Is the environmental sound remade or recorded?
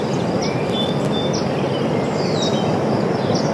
recorded